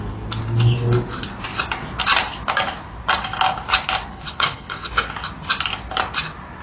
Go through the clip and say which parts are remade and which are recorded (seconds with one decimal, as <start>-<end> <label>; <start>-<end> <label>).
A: 0.0-4.1 recorded; 4.1-4.9 remade; 4.9-6.6 recorded